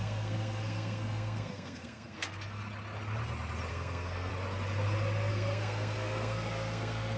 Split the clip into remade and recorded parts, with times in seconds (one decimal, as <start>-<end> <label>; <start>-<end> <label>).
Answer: 0.0-2.6 remade; 2.6-3.7 recorded; 3.7-4.3 remade; 4.3-5.3 recorded; 5.3-7.2 remade